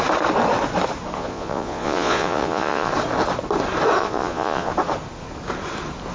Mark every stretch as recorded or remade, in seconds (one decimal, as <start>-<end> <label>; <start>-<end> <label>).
0.0-1.2 recorded; 1.2-2.9 remade; 2.9-4.0 recorded; 4.0-4.7 remade; 4.7-6.1 recorded